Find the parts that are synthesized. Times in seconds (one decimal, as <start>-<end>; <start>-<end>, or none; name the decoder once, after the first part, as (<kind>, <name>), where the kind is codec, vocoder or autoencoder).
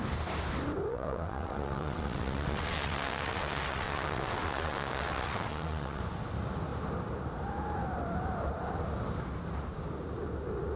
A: 0.9-6.0 (vocoder, WaveNeXt)